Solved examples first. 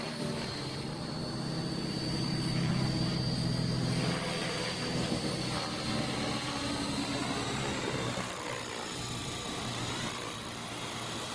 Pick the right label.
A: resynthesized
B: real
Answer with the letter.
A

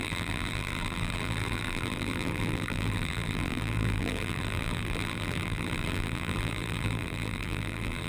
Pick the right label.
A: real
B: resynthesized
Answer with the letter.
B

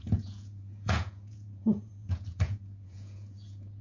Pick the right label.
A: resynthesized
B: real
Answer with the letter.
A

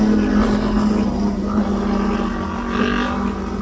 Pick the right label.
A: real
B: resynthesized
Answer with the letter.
A